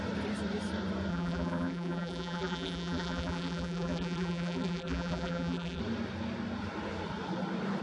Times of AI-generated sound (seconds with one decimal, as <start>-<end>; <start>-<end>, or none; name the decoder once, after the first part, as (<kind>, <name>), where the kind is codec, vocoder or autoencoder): 1.1-5.8 (vocoder, BigVGAN v2)